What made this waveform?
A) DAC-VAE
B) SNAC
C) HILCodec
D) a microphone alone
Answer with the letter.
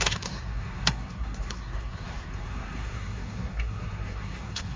B